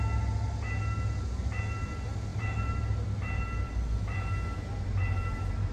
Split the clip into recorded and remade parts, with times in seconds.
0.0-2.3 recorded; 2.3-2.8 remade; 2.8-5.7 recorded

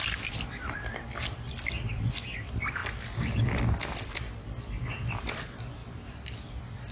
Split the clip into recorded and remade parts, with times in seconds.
0.0-1.2 recorded; 1.2-1.9 remade; 1.9-5.8 recorded; 5.8-6.9 remade

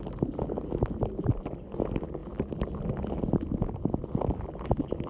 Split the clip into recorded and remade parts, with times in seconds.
0.0-5.1 recorded

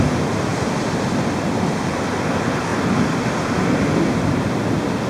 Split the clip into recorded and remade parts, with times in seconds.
0.0-5.1 recorded

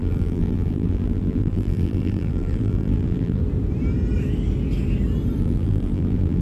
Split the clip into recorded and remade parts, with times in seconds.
0.0-3.4 remade; 3.4-5.4 recorded; 5.4-6.4 remade

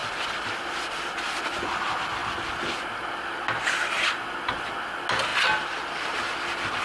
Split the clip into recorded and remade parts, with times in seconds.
0.0-6.8 recorded